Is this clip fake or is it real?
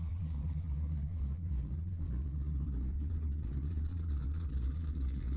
fake